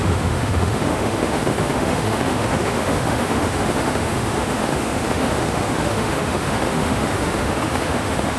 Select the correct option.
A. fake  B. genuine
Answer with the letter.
A